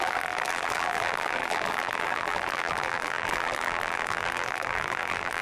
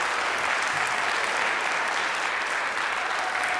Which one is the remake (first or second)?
first